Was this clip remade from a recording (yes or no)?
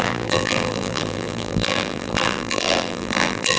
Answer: yes